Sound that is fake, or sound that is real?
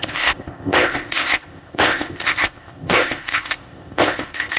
fake